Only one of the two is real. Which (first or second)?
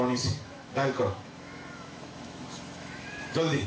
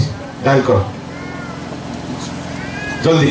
second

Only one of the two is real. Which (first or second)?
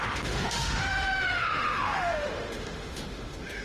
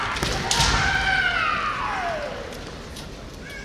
second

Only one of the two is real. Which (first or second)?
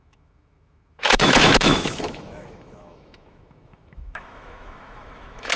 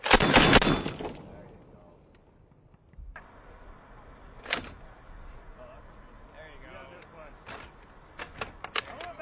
second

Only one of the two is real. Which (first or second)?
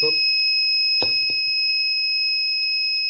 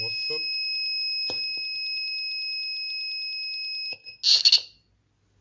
second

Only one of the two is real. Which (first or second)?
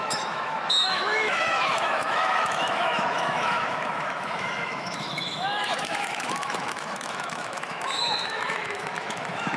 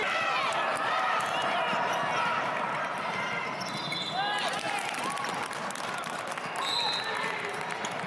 second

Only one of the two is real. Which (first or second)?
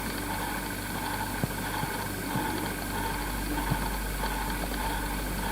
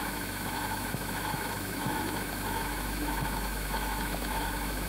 first